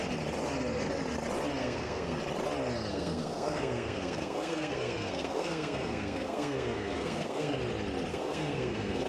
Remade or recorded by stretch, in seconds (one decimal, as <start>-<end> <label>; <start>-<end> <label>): 0.0-1.6 recorded; 1.6-2.2 remade; 2.2-2.9 recorded; 2.9-7.6 remade; 7.6-8.1 recorded; 8.1-9.1 remade